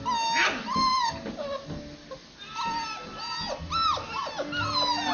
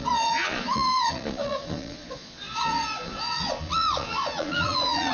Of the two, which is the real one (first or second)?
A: first